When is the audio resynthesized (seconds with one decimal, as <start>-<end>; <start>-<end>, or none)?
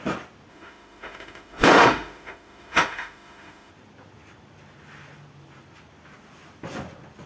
0.5-3.7